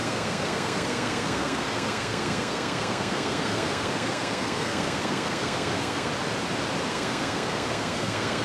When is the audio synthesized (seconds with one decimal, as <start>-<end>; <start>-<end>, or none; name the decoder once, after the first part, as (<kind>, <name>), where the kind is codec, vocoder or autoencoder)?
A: 0.0-6.1 (codec, SNAC); 6.9-8.4